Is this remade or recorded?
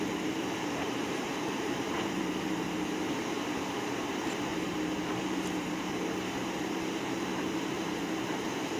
remade